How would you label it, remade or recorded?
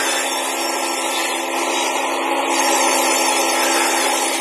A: recorded